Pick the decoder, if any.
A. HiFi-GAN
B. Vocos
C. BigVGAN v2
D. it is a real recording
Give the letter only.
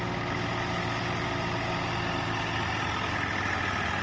D